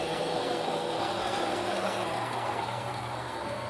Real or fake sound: fake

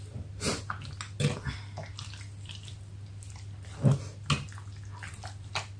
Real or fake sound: real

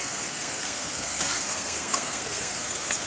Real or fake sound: fake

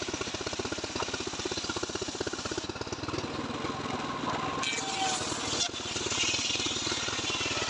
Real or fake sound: real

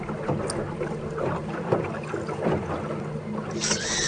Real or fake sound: real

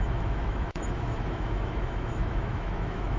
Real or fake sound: fake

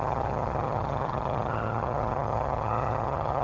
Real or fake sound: fake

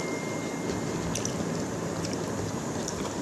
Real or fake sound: real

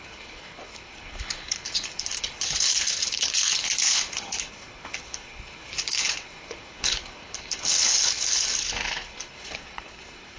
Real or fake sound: fake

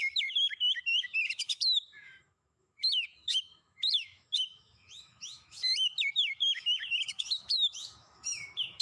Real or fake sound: fake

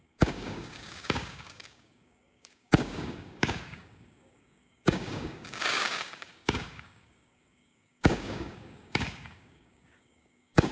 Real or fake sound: fake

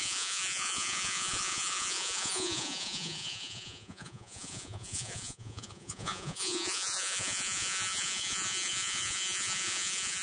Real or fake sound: fake